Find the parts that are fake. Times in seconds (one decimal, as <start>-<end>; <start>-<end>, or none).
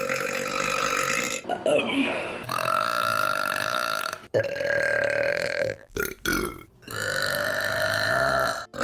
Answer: 5.3-6.0